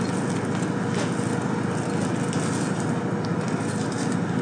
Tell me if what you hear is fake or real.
real